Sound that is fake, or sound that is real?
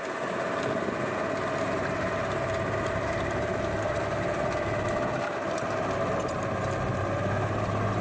real